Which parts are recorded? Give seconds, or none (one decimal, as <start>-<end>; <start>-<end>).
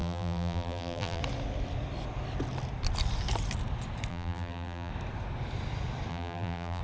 1.2-4.1; 4.9-6.1